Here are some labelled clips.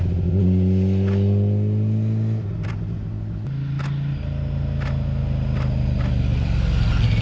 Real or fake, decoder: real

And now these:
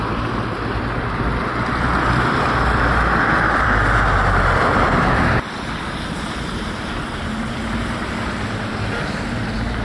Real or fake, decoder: fake, vocoder, BigVGAN v2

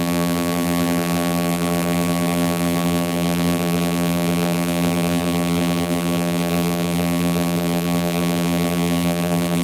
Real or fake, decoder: fake, vocoder, BigVGAN v2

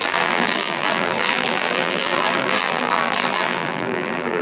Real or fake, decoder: fake, vocoder, BigVGAN v2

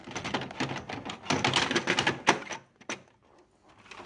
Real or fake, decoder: real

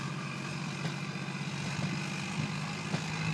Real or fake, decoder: real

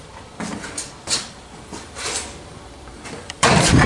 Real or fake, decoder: fake, vocoder, BigVGAN v2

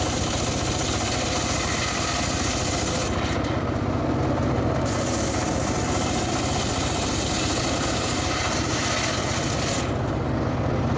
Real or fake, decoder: real